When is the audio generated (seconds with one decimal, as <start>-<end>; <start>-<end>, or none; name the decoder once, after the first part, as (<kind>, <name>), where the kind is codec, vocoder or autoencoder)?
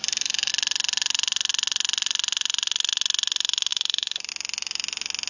0.0-0.5 (vocoder, BigVGAN v2); 3.7-4.3